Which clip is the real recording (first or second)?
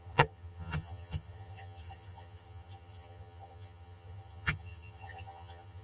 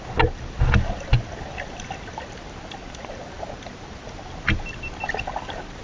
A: second